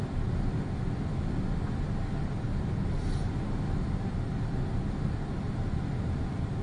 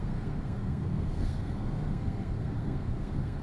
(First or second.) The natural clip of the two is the first